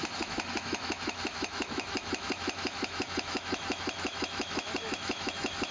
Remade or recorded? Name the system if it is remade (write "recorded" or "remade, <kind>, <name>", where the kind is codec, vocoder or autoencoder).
remade, autoencoder, DAC-VAE